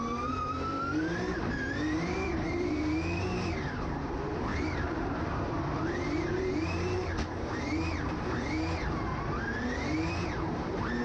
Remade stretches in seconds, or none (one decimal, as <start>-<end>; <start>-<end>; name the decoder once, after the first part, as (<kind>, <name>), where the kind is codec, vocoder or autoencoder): 0.0-11.0 (vocoder, BigVGAN v2)